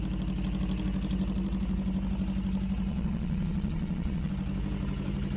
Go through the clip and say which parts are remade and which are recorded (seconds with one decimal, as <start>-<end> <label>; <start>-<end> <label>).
0.0-2.9 recorded; 2.9-4.3 remade; 4.3-5.4 recorded